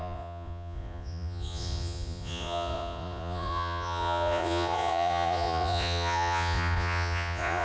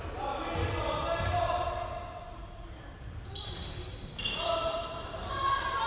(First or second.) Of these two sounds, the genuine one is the second